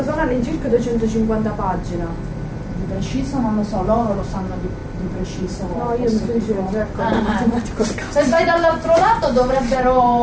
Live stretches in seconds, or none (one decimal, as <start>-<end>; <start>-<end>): 0.9-4.2